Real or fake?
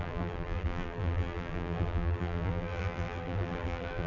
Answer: fake